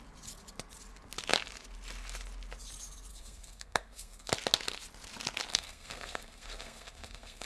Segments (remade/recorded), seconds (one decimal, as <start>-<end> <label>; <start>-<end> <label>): 0.0-3.1 recorded; 3.1-4.3 remade; 4.3-5.5 recorded; 5.5-7.5 remade